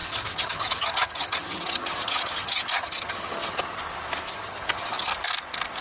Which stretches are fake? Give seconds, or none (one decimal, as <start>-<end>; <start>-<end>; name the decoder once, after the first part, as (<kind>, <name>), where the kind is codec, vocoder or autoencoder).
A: 0.0-3.8 (vocoder, HiFi-GAN); 4.3-5.1

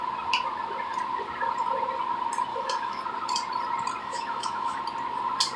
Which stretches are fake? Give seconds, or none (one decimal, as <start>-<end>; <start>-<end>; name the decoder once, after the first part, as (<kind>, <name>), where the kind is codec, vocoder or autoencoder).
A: 2.5-3.0 (autoencoder, DAC-VAE); 4.0-4.8